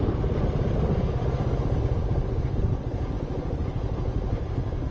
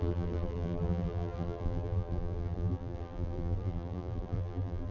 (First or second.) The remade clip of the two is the second